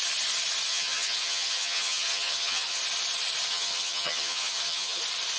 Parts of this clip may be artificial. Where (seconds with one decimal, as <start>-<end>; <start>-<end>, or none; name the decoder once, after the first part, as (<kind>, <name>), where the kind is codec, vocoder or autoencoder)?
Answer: 0.7-2.8 (vocoder, HiFi-GAN); 3.5-5.0